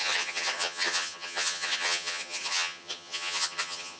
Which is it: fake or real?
fake